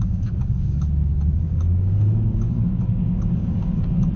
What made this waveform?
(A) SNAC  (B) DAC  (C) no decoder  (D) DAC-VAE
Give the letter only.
B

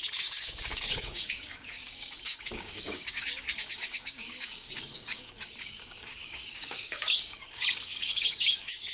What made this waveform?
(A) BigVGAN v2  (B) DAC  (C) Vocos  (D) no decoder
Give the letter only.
B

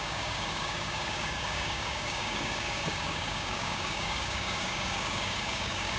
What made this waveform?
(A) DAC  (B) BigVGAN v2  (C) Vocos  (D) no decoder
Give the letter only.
A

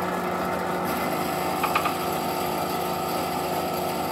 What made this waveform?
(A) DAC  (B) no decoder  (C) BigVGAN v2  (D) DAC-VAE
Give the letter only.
B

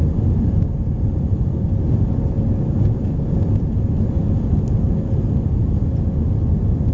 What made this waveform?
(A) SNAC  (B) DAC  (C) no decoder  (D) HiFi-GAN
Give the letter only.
C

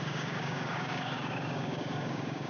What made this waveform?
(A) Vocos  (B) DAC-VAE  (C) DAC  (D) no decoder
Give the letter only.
C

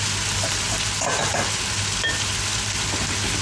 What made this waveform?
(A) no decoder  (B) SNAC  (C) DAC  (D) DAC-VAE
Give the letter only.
A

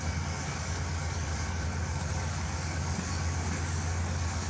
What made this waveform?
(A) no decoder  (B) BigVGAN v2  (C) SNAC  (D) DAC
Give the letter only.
D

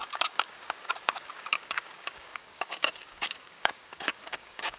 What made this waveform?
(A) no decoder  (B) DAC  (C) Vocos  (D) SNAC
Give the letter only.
B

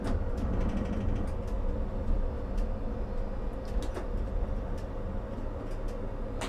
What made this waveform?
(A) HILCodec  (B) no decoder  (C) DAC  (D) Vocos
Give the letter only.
B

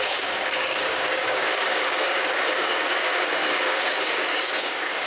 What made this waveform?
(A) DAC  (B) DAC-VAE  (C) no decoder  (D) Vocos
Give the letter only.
A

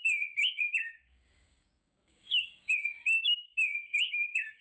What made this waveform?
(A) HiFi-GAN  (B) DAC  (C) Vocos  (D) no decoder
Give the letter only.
B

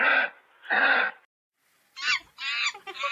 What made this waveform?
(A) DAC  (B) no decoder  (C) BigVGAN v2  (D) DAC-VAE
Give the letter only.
B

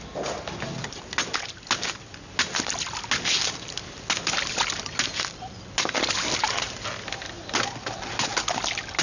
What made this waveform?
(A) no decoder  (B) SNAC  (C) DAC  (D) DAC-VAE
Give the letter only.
A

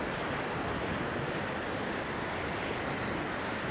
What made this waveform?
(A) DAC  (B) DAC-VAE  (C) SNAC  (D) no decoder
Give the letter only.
D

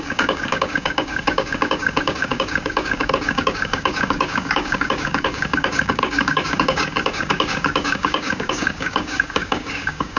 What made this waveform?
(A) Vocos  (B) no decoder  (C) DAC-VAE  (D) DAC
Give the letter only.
D